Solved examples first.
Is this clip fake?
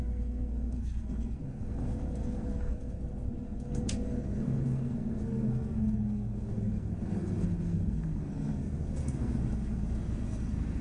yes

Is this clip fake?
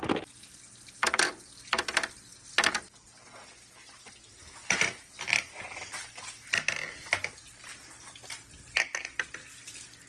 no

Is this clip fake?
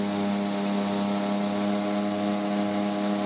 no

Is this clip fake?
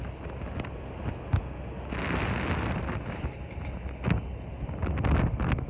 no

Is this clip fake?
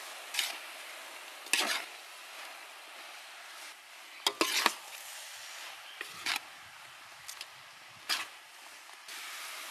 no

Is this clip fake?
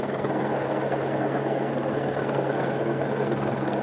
yes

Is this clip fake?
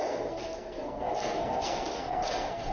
yes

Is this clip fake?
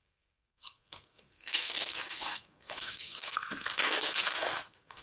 yes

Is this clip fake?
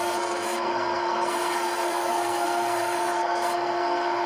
yes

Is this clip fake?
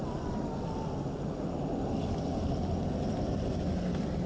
no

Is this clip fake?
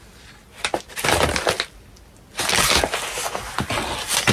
no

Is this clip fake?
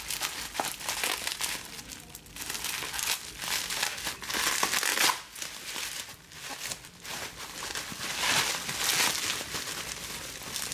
no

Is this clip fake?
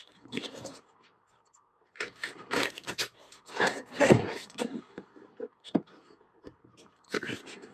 yes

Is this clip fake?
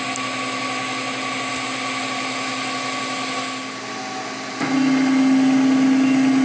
no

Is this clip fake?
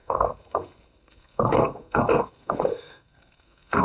yes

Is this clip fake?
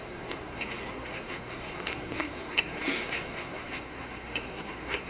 yes